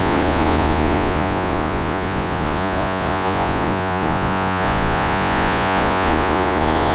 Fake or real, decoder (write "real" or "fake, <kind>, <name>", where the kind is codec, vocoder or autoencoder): fake, vocoder, Vocos